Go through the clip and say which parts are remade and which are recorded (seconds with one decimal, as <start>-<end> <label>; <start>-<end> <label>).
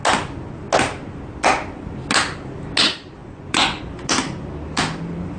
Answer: 0.0-3.2 recorded; 3.2-3.8 remade; 3.8-5.4 recorded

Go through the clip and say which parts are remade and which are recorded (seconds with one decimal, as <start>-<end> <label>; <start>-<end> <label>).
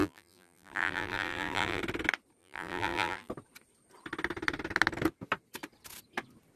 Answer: 0.0-1.8 remade; 1.8-2.4 recorded; 2.4-3.3 remade; 3.3-6.6 recorded